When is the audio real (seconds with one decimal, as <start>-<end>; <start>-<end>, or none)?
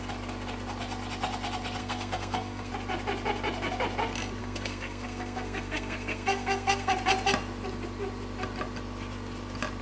0.0-1.8; 2.7-4.4; 6.9-9.8